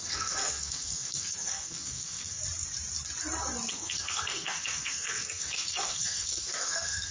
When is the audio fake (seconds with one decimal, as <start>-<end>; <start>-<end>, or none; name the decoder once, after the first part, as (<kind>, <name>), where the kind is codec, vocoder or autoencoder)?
0.0-2.4 (codec, SNAC); 3.7-7.1